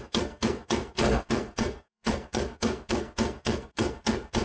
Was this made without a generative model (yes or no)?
no